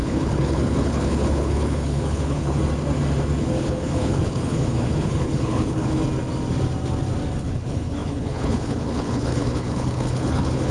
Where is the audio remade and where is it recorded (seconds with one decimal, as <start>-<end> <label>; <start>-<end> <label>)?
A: 0.0-2.6 remade; 2.6-3.4 recorded; 3.4-6.0 remade; 6.0-7.4 recorded; 7.4-10.7 remade